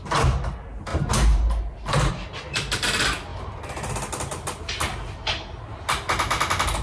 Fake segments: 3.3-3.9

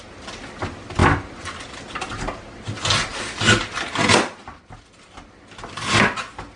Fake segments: none

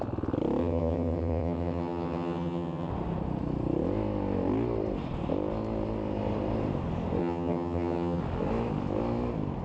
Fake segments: 0.6-2.9; 7.2-8.2

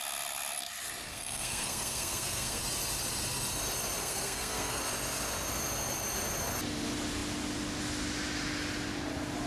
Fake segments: 1.1-2.6; 4.0-4.8

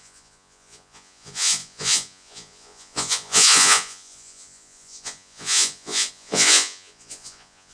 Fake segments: 0.0-7.7

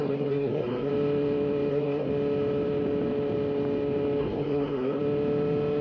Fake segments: 0.0-0.9; 1.7-2.1; 4.2-5.0

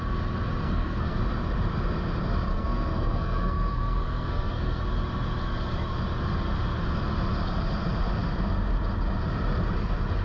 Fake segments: 0.6-1.2; 2.5-4.8